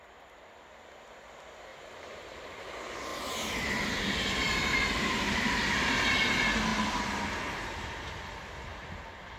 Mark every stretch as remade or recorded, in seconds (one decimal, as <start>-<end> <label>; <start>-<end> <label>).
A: 0.0-1.7 recorded; 1.7-2.6 remade; 2.6-3.1 recorded; 3.1-6.2 remade; 6.2-6.7 recorded; 6.7-7.2 remade; 7.2-8.7 recorded; 8.7-9.4 remade